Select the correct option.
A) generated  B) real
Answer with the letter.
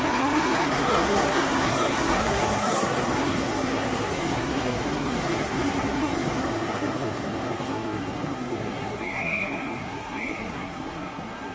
A